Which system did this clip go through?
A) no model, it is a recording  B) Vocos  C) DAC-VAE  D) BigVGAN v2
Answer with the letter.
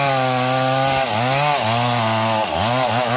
A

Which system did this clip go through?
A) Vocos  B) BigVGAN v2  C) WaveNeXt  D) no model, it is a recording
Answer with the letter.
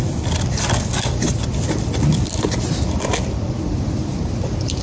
B